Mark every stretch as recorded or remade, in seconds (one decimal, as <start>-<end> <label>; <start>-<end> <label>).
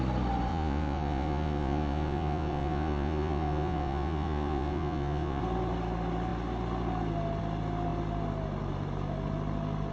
0.0-0.5 recorded; 0.5-5.4 remade; 5.4-9.9 recorded